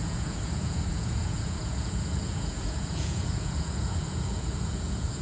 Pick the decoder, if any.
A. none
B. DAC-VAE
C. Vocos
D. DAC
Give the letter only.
C